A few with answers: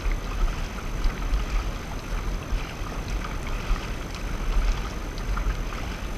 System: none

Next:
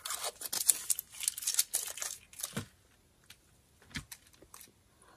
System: none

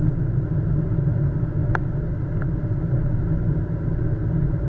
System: none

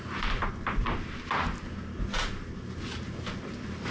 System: none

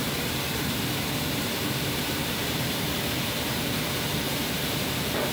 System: vocoder, BigVGAN v2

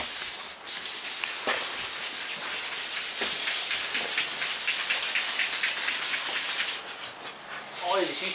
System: none